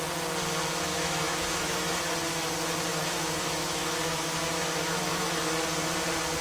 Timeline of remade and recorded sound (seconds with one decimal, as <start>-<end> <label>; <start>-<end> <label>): 0.0-0.9 recorded; 0.9-2.0 remade; 2.0-2.9 recorded; 2.9-5.4 remade; 5.4-6.4 recorded